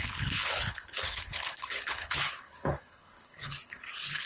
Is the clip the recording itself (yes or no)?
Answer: no